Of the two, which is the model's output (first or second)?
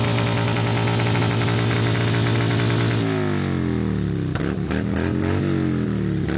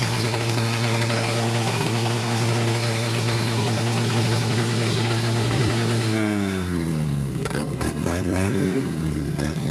second